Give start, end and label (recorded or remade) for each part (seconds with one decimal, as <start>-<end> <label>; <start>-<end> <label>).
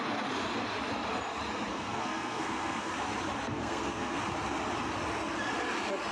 0.0-1.7 recorded; 1.7-2.9 remade; 2.9-3.4 recorded; 3.4-4.2 remade; 4.2-6.1 recorded